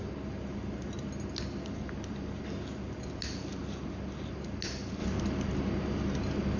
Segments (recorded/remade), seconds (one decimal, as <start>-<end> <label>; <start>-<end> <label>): 0.0-6.6 recorded